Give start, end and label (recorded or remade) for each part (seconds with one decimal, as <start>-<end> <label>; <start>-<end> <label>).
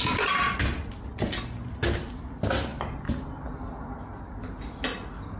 0.0-5.4 recorded